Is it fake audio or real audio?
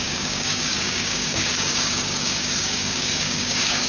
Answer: fake